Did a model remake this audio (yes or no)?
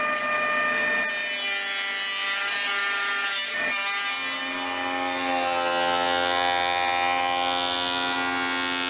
no